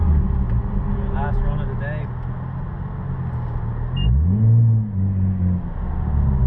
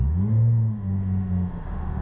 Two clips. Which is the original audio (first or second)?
first